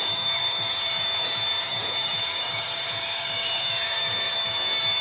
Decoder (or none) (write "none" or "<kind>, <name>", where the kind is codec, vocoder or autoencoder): codec, DAC